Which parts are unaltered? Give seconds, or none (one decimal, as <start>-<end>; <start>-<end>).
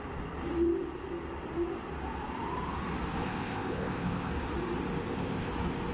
0.0-3.2; 4.3-5.0; 5.5-5.9